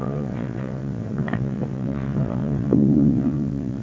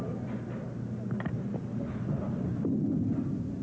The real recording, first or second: second